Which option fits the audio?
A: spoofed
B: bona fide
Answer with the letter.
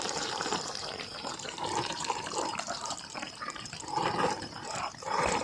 A